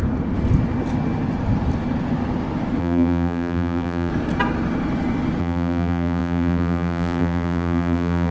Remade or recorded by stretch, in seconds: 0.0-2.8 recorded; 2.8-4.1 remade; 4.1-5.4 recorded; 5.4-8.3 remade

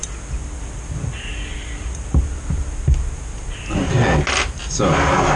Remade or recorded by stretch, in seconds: 0.0-5.4 recorded

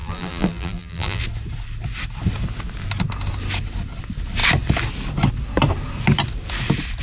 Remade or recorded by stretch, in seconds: 0.0-1.2 remade; 1.2-7.0 recorded

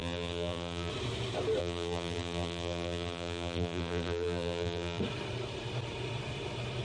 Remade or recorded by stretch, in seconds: 0.0-0.9 remade; 0.9-1.6 recorded; 1.6-5.0 remade; 5.0-6.8 recorded

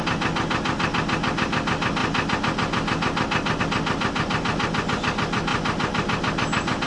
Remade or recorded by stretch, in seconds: 0.0-6.9 recorded

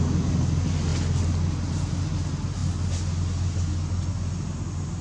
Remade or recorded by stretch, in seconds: 0.0-5.0 recorded

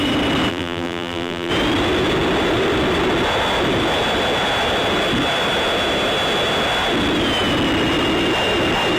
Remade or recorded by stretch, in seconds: 0.0-0.5 recorded; 0.5-1.5 remade; 1.5-9.0 recorded